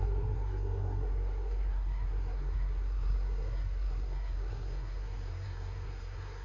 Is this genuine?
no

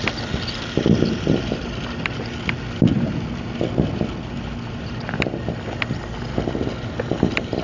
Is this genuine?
yes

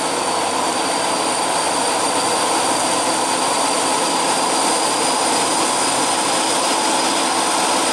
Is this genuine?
yes